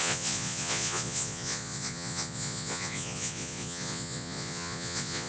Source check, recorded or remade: remade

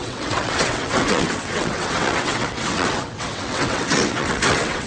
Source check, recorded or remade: remade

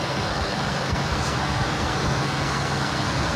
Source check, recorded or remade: remade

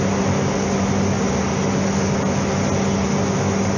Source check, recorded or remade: recorded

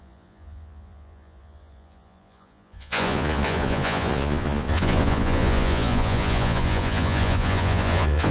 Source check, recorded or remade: remade